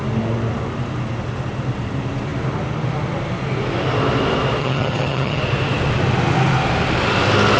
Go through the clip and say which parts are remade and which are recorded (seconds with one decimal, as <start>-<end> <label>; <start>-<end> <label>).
0.0-4.6 recorded; 4.6-5.4 remade; 5.4-7.6 recorded